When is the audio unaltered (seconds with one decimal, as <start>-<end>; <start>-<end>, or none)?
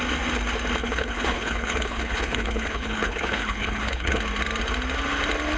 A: 0.0-0.8; 4.2-5.6